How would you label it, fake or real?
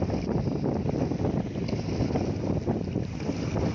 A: real